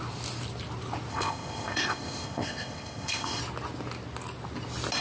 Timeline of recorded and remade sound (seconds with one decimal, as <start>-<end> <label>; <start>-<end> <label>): 0.0-1.1 recorded; 1.1-3.4 remade; 3.4-5.0 recorded